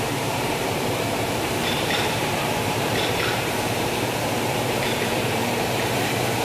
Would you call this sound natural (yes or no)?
no